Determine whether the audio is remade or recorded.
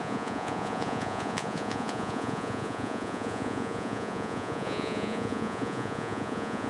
remade